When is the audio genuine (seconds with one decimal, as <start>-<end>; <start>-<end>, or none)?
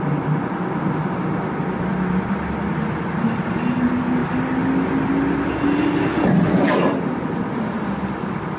0.0-8.6